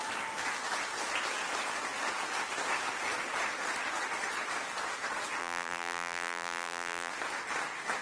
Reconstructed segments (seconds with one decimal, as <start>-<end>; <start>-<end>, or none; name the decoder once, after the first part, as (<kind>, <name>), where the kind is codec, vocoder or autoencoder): 5.4-7.1 (vocoder, BigVGAN v2)